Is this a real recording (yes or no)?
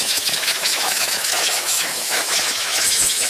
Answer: no